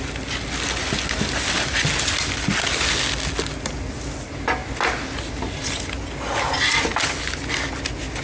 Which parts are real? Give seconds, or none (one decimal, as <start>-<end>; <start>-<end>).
0.0-8.2